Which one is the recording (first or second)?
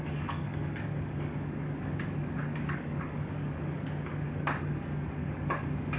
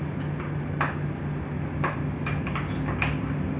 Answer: second